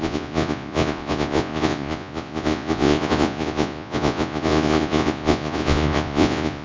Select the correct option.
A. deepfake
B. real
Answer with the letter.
A